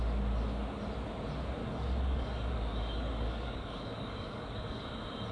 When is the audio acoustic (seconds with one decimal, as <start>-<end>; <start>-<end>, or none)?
0.0-1.6; 4.8-5.3